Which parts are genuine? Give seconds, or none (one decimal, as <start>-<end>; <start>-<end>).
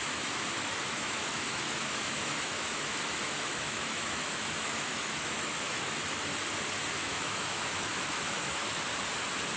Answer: 6.3-6.9; 8.9-9.6